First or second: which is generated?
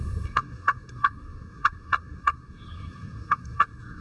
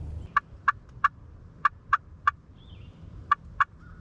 first